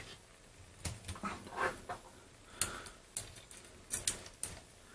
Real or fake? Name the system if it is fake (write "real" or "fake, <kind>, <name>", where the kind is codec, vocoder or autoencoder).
real